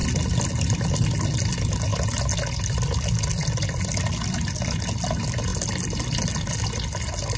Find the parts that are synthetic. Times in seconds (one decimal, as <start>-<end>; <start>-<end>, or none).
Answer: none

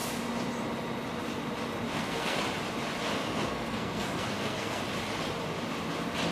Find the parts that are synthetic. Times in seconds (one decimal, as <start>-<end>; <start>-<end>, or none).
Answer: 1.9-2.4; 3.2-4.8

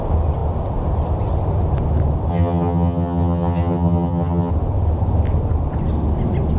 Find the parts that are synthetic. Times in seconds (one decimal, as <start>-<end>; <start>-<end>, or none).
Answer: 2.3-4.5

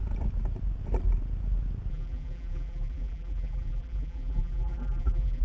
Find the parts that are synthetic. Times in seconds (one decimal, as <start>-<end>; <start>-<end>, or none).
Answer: 1.9-5.4

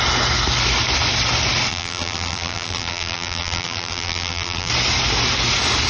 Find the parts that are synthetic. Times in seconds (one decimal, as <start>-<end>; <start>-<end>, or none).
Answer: 1.7-4.7

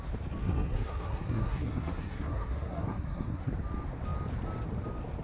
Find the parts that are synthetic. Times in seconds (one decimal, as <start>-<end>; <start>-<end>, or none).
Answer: 0.4-3.5

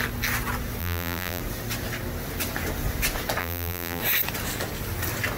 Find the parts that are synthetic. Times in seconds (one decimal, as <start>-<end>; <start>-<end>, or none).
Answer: 0.8-1.4; 3.4-4.0